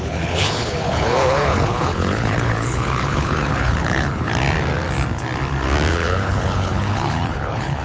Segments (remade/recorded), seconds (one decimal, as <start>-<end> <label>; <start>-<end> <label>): 0.0-4.3 remade; 4.3-5.9 recorded; 5.9-7.8 remade